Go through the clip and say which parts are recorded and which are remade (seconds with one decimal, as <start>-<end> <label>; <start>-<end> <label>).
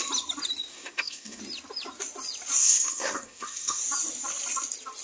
0.0-0.7 recorded; 0.7-1.4 remade; 1.4-2.6 recorded; 2.6-3.8 remade; 3.8-5.0 recorded